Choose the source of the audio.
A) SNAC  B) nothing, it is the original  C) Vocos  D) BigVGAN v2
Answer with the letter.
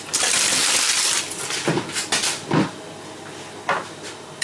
B